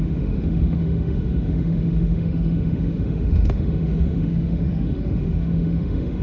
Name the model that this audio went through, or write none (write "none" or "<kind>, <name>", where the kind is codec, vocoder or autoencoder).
autoencoder, DAC-VAE